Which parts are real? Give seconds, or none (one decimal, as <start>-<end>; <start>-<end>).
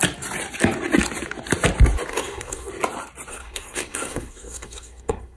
0.0-2.1; 2.7-3.3